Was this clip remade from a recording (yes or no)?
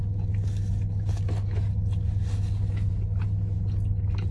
no